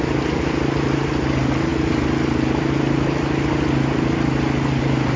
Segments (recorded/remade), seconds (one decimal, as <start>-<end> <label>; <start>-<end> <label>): 0.0-5.2 recorded